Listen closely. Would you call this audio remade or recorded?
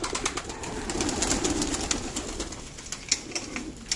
recorded